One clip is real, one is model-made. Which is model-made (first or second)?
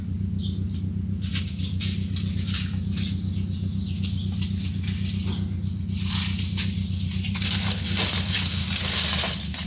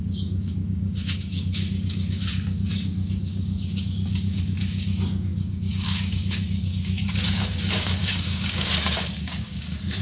second